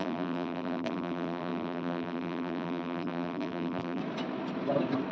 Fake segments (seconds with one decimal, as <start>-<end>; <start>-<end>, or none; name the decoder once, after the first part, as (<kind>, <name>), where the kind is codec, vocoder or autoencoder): 0.0-4.0 (vocoder, BigVGAN v2)